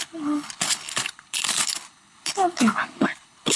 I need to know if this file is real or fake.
fake